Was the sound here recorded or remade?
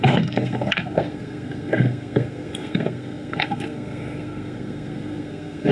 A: remade